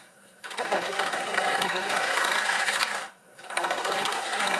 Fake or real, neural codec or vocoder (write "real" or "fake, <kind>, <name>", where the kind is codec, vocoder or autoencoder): fake, codec, SNAC